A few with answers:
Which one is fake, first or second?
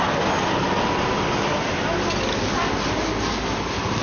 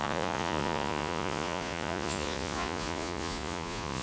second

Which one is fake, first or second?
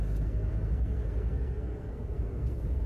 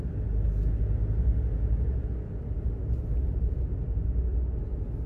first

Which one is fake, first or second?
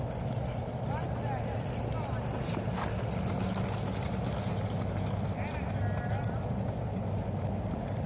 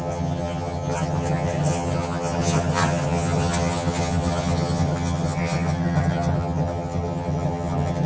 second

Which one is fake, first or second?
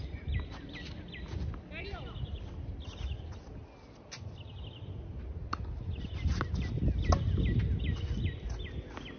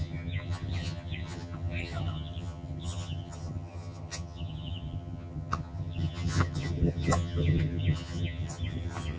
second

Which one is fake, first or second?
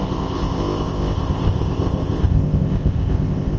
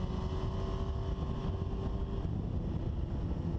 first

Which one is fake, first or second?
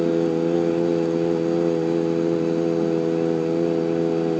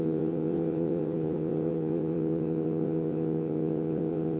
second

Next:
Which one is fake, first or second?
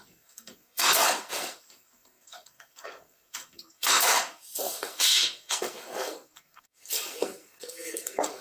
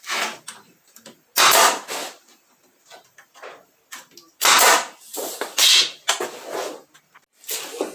first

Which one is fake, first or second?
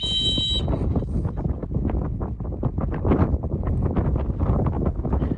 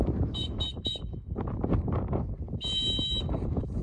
second